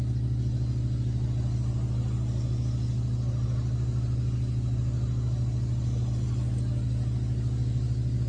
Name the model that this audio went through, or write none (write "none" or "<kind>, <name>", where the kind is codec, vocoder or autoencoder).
none